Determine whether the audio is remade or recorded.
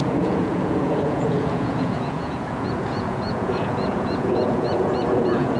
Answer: remade